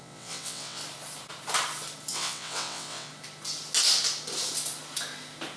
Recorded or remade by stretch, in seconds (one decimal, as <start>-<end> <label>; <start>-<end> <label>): 0.0-0.8 remade; 0.8-2.1 recorded; 2.1-3.1 remade; 3.1-5.6 recorded